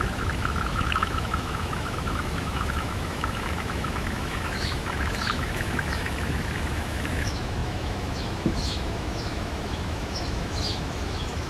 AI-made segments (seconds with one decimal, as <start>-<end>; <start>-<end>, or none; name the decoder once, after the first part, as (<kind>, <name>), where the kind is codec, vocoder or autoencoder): 0.0-11.5 (autoencoder, DAC-VAE)